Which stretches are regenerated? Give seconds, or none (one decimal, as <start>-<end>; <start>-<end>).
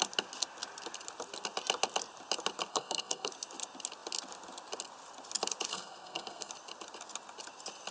2.7-3.3; 5.7-6.5